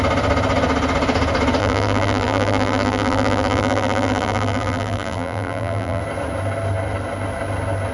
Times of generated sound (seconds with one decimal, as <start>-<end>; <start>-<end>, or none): 1.6-6.0